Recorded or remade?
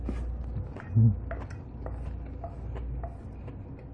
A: recorded